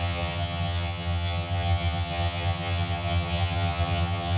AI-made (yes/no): yes